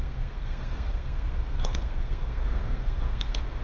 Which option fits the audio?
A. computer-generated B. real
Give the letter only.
A